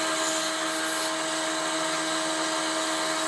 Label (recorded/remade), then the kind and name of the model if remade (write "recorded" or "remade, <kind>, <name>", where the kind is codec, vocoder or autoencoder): recorded